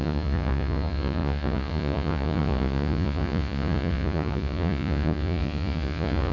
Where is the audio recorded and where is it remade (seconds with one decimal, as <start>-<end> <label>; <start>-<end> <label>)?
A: 0.0-6.3 remade